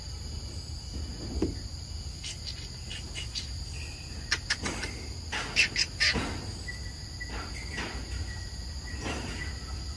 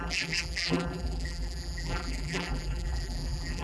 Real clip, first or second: first